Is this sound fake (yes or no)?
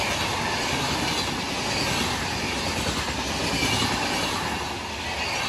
no